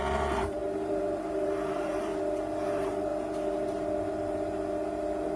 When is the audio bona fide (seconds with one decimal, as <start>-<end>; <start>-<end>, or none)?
2.1-2.7; 3.1-5.4